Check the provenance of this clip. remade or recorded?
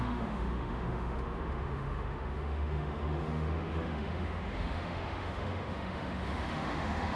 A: remade